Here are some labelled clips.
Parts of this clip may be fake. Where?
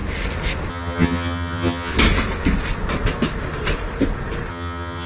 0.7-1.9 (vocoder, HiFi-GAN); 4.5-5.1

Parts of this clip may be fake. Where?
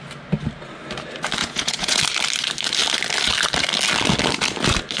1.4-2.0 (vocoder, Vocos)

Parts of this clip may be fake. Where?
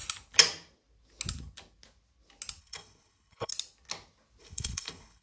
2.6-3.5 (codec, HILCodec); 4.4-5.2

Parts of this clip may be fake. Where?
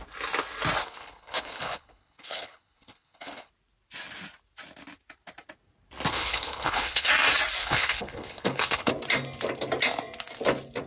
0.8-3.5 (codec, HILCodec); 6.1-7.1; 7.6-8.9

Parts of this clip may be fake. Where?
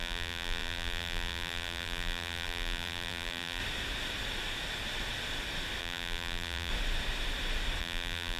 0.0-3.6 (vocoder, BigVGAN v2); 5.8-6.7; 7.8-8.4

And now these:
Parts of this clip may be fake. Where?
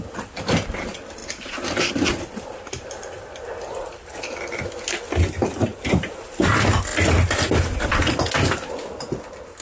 1.2-4.7 (vocoder, BigVGAN v2); 5.7-6.5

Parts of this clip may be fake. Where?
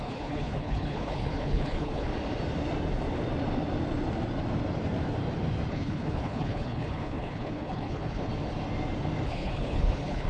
0.0-2.1 (codec, HILCodec); 5.7-8.3; 9.3-10.3